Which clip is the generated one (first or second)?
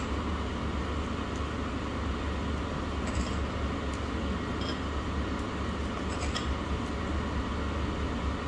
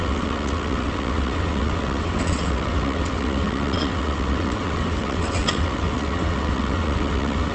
second